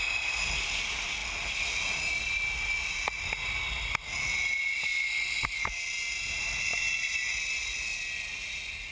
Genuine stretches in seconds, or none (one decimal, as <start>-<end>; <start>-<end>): 0.0-8.9